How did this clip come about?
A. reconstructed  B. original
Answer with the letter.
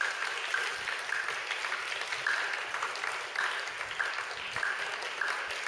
B